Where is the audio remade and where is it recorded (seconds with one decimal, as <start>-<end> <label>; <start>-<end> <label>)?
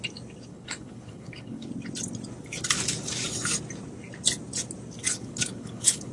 0.0-0.5 recorded; 0.5-1.7 remade; 1.7-5.0 recorded; 5.0-6.1 remade